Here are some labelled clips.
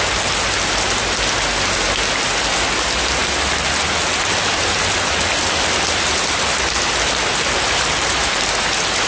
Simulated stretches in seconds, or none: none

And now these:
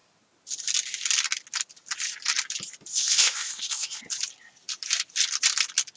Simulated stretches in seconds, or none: 2.9-4.0

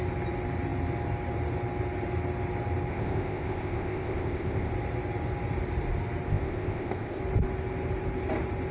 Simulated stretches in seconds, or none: 2.9-4.7; 6.3-7.2

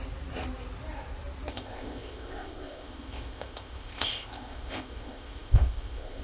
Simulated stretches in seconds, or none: 1.5-6.2

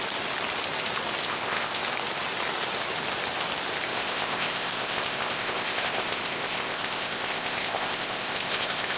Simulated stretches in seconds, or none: 1.2-1.8; 3.9-9.0

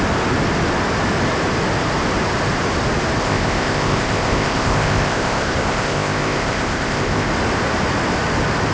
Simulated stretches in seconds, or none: 3.2-7.3